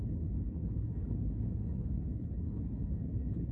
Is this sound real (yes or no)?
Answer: no